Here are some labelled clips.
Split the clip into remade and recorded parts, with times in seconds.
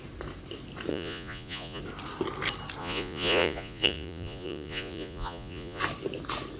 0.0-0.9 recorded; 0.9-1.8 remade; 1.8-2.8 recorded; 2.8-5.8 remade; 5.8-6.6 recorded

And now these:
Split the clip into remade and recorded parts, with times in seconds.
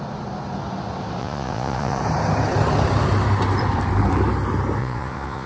0.0-1.2 recorded; 1.2-2.0 remade; 2.0-4.8 recorded; 4.8-5.5 remade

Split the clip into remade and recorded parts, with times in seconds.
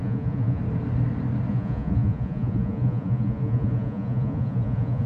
0.0-0.6 remade; 0.6-1.5 recorded; 1.5-5.1 remade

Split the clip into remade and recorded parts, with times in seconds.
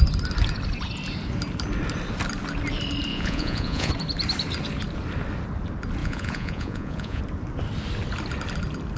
0.0-3.1 recorded; 3.1-3.9 remade; 3.9-6.0 recorded; 6.0-7.2 remade; 7.2-9.0 recorded